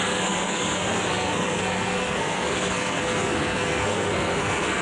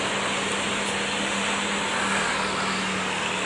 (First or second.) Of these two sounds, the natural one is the second